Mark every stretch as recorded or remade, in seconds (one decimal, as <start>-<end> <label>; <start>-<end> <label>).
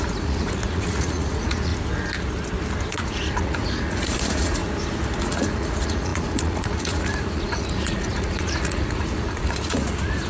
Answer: 0.0-1.7 remade; 1.7-2.9 recorded; 2.9-4.6 remade; 4.6-5.2 recorded; 5.2-10.3 remade